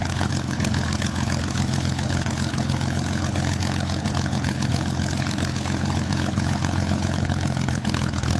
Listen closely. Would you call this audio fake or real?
fake